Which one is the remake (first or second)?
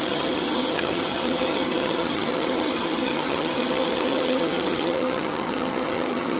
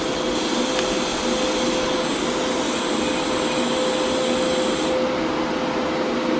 first